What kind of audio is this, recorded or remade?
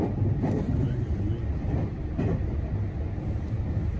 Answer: recorded